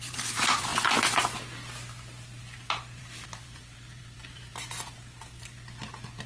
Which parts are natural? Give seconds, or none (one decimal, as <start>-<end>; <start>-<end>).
0.7-3.0; 4.5-6.3